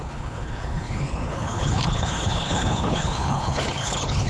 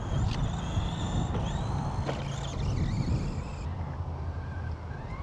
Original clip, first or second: second